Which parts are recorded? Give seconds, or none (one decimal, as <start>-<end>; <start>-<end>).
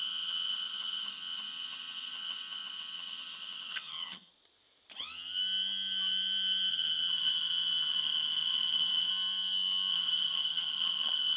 4.3-6.7; 9.1-9.9